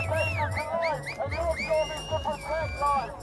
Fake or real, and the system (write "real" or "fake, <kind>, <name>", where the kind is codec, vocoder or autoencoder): real